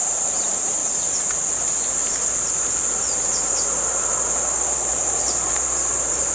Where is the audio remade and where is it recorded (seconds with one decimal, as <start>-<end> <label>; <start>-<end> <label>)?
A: 0.0-0.8 remade; 0.8-4.6 recorded; 4.6-6.3 remade